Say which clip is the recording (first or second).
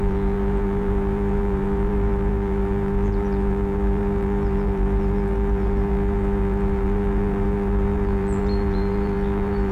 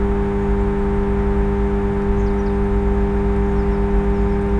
second